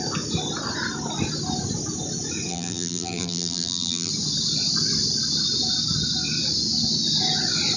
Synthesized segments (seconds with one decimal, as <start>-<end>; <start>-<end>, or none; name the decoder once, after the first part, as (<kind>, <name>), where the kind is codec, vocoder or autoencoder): 2.5-4.1 (vocoder, BigVGAN v2)